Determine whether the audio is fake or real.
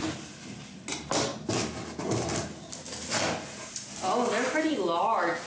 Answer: real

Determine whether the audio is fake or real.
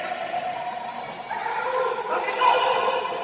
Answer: real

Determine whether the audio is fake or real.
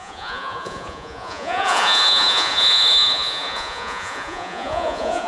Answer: fake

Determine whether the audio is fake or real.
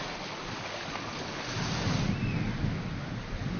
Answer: real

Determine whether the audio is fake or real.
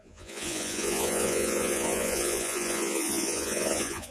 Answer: fake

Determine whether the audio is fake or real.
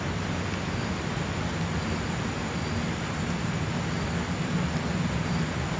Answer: real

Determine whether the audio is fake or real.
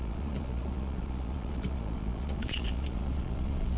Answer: fake